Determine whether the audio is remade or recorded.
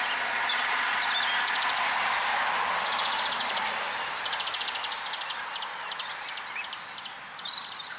recorded